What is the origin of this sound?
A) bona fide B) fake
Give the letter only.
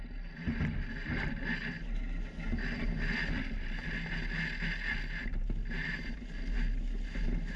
A